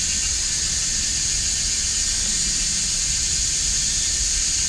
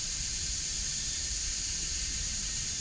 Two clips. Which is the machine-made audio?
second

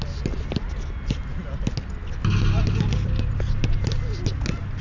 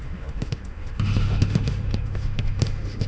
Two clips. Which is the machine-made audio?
second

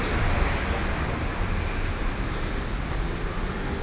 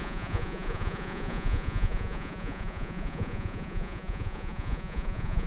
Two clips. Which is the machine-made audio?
second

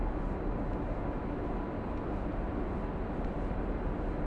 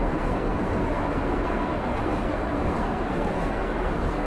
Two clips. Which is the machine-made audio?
second